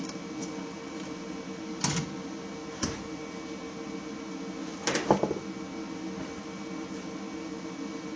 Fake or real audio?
real